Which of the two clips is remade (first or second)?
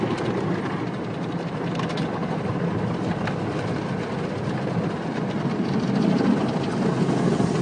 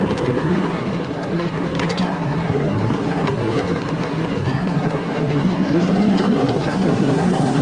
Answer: second